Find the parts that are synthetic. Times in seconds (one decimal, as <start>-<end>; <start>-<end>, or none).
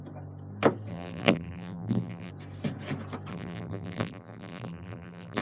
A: 0.9-2.3; 3.3-5.4